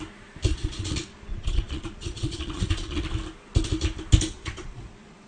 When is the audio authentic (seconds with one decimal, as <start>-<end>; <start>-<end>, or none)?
0.0-0.5; 3.0-4.3